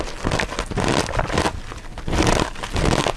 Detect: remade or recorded recorded